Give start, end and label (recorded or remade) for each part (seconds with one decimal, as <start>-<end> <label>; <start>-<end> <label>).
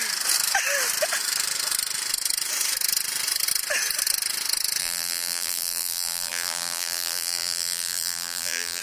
0.0-4.8 recorded; 4.8-8.8 remade